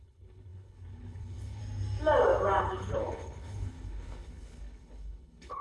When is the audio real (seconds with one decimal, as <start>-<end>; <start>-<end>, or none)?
1.6-2.6